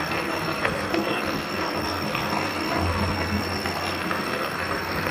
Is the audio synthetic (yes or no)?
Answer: yes